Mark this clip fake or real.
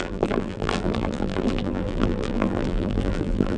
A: fake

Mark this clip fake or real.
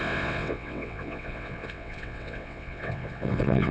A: fake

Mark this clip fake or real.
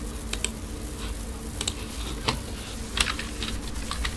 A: real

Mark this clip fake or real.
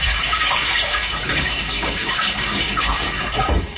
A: fake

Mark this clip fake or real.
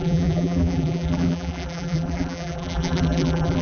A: fake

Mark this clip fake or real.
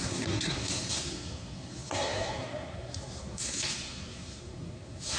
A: fake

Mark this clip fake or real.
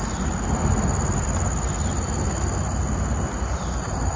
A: real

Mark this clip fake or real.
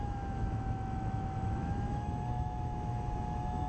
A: fake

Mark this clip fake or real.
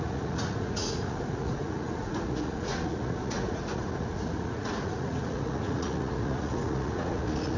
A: fake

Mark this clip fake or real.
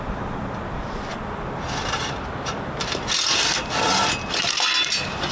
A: real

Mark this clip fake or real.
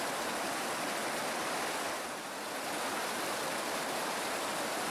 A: real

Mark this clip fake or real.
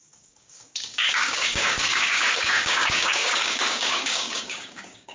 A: fake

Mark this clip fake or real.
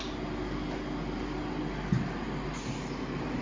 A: real